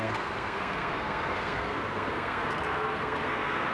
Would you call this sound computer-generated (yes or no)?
yes